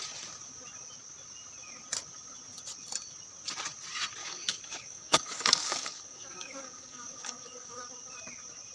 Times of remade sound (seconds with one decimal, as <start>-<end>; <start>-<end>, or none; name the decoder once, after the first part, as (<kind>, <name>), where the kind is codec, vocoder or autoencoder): 4.2-7.8 (codec, DAC)